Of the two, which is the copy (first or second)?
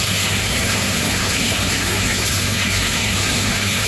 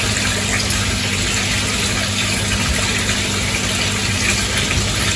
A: first